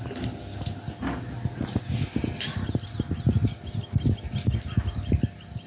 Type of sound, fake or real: real